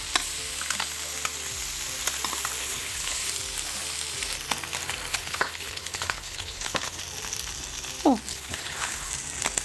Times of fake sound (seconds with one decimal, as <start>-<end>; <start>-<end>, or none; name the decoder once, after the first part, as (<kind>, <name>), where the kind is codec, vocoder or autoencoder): 2.6-3.3 (codec, HILCodec); 5.1-7.0; 8.3-9.1